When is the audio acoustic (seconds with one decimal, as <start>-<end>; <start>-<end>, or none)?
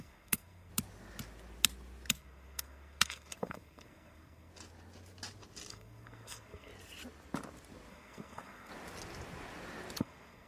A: 0.7-2.1; 4.5-5.7; 6.7-7.9; 8.7-10.0